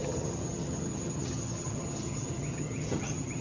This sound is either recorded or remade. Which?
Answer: remade